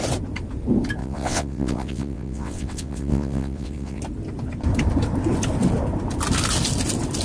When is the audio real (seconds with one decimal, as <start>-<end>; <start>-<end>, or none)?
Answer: 0.0-1.0; 4.0-7.2